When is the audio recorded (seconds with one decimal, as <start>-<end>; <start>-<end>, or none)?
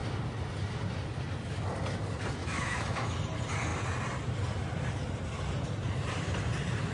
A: 0.0-2.4; 3.2-6.9